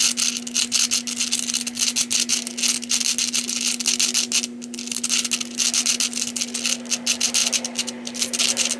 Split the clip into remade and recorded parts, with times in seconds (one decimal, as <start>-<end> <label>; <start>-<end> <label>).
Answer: 0.0-8.8 recorded